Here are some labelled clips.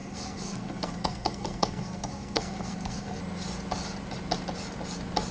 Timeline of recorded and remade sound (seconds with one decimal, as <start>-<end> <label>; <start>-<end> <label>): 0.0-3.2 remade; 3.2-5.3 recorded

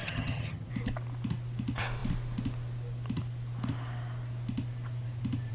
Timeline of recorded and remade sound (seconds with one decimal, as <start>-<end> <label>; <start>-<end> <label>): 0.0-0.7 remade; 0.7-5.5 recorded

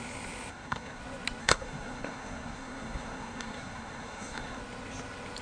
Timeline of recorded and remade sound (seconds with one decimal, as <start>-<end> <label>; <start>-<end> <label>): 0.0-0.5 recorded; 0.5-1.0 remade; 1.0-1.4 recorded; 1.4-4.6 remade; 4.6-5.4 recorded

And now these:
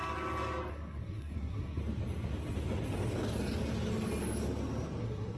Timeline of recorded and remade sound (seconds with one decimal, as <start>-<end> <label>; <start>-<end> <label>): 0.0-0.7 recorded; 0.7-1.8 remade; 1.8-5.0 recorded; 5.0-5.4 remade